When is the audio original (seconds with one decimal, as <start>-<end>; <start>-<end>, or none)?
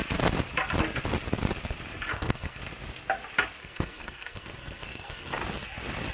0.0-2.1; 2.6-3.6; 5.4-6.1